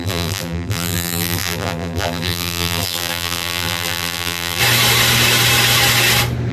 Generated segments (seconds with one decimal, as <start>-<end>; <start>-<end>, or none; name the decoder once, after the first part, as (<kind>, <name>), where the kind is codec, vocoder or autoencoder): 0.0-4.6 (vocoder, BigVGAN v2)